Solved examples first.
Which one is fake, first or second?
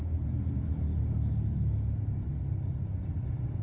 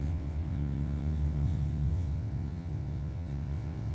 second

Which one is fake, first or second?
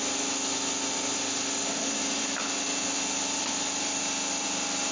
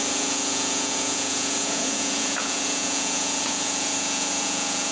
second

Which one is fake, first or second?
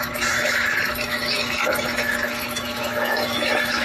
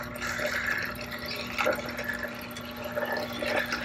first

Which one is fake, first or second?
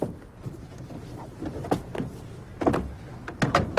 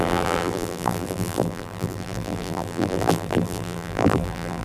second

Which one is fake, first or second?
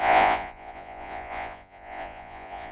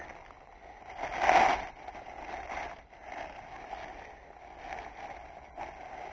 first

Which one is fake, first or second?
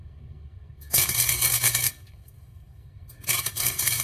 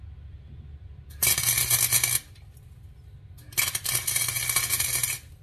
first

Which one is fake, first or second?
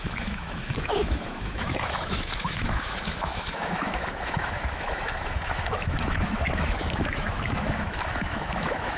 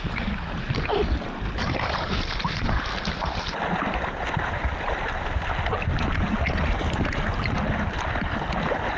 first